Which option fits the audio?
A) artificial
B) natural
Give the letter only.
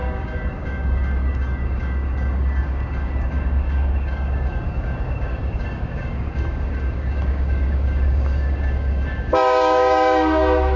A